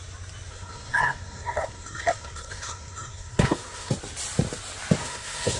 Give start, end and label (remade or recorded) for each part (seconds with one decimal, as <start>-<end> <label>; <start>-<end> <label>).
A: 0.0-0.5 recorded; 0.5-3.9 remade; 3.9-5.0 recorded; 5.0-5.6 remade